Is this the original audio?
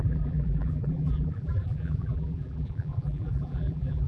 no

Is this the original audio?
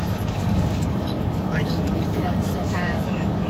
no